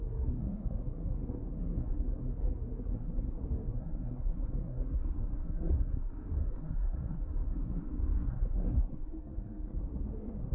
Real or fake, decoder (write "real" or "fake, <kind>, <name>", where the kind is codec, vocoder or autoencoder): fake, codec, SNAC